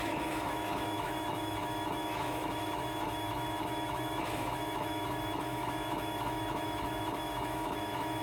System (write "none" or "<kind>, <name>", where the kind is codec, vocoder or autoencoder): autoencoder, DAC-VAE